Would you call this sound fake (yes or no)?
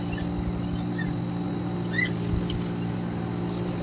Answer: no